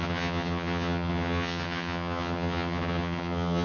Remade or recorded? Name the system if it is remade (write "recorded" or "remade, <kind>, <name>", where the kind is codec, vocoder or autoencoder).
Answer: remade, vocoder, HiFi-GAN